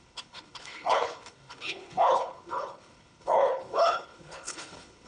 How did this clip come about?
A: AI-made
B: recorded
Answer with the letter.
A